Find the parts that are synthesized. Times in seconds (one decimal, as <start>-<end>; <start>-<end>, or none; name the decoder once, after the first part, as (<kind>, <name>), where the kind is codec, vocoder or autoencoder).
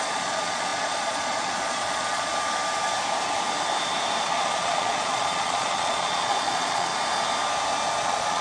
0.0-2.3 (vocoder, Vocos); 4.2-6.9; 8.0-8.4